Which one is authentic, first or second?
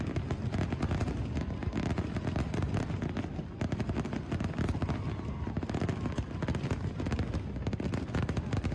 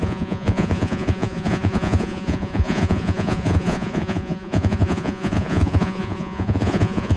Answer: first